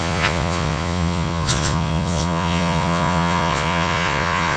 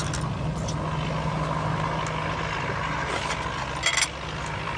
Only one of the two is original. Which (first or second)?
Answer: second